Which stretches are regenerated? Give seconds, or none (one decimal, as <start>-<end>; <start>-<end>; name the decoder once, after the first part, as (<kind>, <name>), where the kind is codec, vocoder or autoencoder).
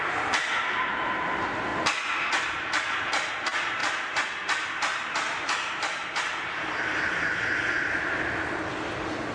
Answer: none